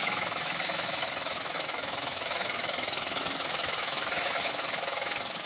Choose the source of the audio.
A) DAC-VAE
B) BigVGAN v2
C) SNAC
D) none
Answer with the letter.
A